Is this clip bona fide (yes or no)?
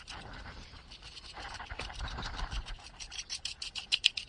yes